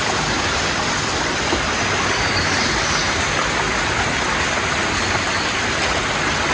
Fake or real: real